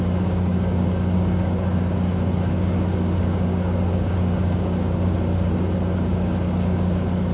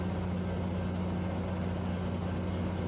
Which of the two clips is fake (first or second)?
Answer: first